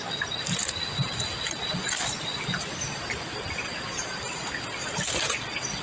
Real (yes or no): yes